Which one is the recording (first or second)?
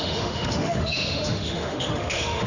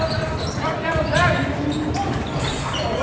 second